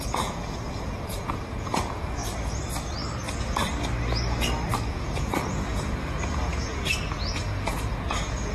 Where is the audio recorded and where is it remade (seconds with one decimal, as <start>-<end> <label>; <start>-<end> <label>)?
0.0-2.2 remade; 2.2-4.9 recorded; 4.9-6.7 remade; 6.7-7.2 recorded; 7.2-8.5 remade